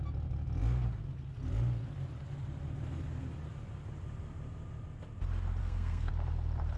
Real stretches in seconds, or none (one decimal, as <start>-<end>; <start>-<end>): 0.0-5.6; 6.1-6.8